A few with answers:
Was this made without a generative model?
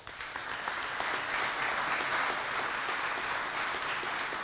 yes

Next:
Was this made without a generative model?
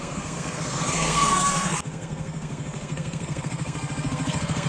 no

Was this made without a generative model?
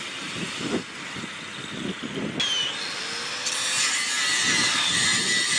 yes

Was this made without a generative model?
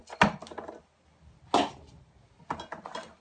yes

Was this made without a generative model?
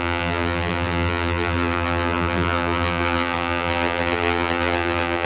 no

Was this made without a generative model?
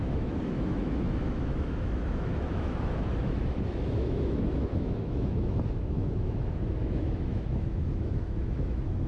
no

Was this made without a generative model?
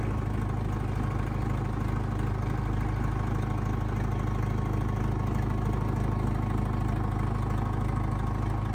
yes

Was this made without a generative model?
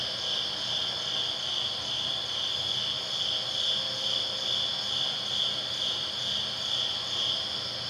yes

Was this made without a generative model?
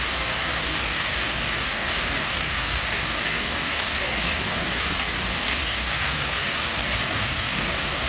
no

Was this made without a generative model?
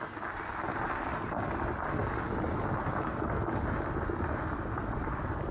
yes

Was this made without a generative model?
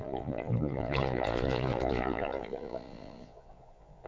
no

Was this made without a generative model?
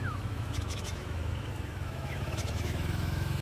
no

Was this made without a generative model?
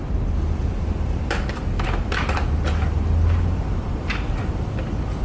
yes